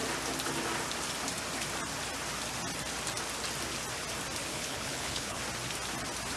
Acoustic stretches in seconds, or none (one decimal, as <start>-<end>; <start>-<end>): 0.0-4.4; 5.4-6.4